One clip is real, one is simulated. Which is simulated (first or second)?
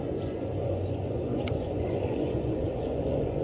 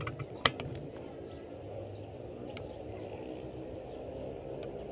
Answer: first